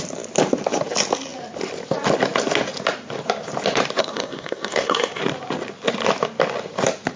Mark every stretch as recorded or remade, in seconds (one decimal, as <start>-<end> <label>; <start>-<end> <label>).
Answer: 0.0-4.0 recorded; 4.0-5.2 remade; 5.2-7.2 recorded